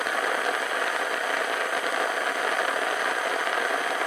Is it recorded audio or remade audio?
recorded